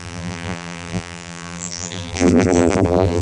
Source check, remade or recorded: remade